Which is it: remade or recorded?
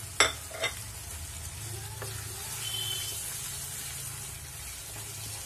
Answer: recorded